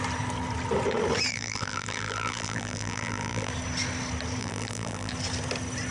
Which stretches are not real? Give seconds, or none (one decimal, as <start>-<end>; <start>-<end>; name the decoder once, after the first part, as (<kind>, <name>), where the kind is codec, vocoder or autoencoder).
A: 1.3-3.5 (vocoder, BigVGAN v2); 4.4-5.1